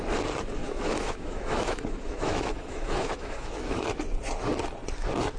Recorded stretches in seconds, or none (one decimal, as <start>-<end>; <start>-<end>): 0.0-0.6; 3.8-5.4